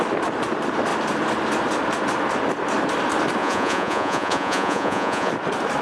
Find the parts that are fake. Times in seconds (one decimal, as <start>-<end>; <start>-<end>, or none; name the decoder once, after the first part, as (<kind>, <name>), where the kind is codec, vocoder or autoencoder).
3.4-5.3 (vocoder, Vocos)